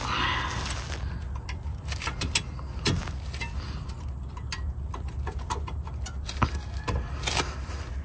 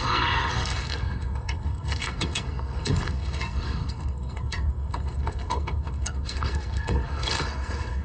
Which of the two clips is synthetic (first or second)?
second